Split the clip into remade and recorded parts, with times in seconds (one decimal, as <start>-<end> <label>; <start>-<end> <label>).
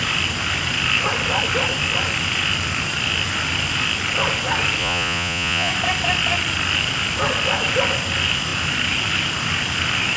0.0-4.8 recorded; 4.8-5.7 remade; 5.7-10.2 recorded